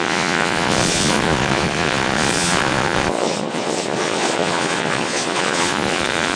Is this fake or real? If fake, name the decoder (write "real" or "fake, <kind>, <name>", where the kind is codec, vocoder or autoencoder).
fake, vocoder, Vocos